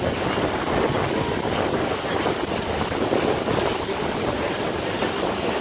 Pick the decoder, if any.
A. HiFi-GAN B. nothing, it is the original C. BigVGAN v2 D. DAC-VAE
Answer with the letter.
B